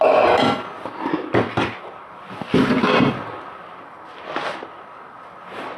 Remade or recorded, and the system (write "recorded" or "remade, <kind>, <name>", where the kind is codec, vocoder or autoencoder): recorded